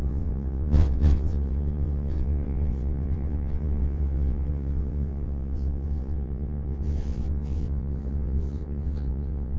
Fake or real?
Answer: fake